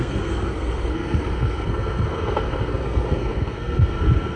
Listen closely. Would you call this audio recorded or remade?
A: remade